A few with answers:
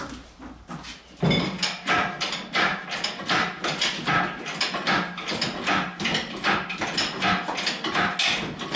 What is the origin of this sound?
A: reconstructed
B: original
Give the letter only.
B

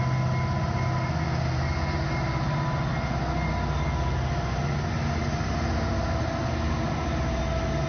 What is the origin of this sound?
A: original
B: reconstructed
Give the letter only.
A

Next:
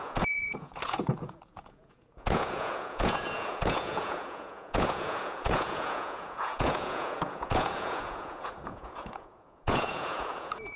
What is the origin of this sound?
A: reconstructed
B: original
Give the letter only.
A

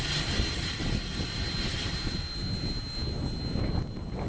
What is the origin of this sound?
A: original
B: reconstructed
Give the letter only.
A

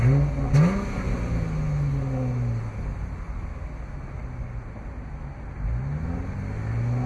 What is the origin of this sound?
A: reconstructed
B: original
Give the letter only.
B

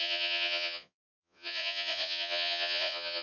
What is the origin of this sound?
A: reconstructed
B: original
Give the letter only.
A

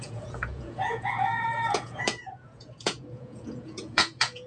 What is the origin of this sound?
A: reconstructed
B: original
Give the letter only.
A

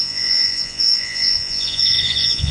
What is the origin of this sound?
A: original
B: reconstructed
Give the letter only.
B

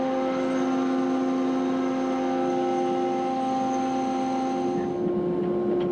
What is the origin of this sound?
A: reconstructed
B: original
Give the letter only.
B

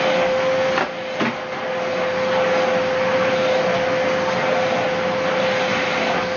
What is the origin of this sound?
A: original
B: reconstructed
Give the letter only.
A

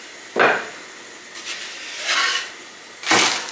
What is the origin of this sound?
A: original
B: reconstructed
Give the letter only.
A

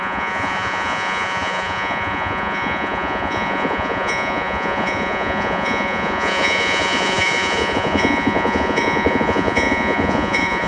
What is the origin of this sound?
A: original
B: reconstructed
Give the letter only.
B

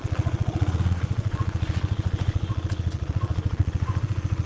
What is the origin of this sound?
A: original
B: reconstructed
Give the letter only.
B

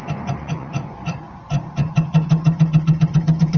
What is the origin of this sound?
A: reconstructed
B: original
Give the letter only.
A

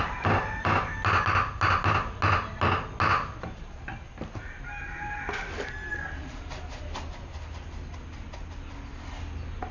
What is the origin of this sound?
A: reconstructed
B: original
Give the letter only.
B